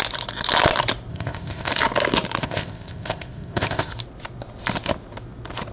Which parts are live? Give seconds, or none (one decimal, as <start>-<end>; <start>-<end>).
0.0-1.1; 1.7-2.4; 3.9-5.7